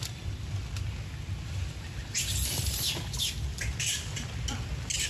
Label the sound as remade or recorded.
recorded